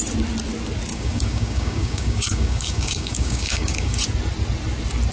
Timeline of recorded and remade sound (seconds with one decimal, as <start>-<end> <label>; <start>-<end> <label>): 0.0-0.9 recorded; 0.9-4.0 remade; 4.0-5.1 recorded